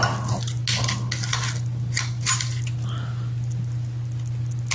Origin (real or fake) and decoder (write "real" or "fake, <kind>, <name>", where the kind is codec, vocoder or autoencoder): real